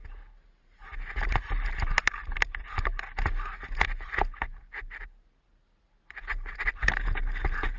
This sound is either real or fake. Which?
real